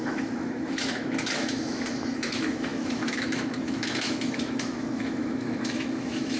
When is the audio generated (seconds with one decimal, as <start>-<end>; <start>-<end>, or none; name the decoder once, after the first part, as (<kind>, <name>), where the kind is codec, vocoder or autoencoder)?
0.0-6.4 (autoencoder, DAC-VAE)